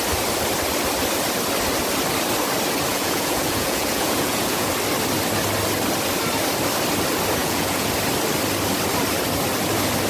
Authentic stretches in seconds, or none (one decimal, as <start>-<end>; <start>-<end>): 0.0-2.9; 4.7-7.4; 7.9-10.1